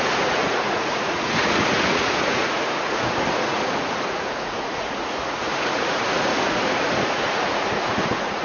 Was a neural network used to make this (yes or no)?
yes